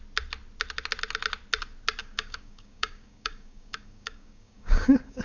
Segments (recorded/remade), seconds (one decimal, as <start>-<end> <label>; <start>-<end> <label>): 0.0-2.0 recorded; 2.0-5.2 remade